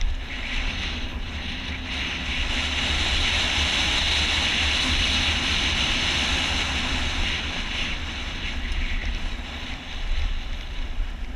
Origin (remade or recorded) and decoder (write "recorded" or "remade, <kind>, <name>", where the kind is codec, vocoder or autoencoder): recorded